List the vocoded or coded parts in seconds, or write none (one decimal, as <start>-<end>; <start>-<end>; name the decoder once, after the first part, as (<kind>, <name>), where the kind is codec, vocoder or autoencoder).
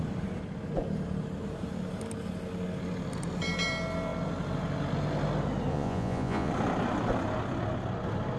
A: 5.7-6.5 (vocoder, Vocos)